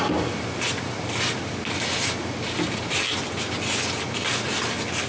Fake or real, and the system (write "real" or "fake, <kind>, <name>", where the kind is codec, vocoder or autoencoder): real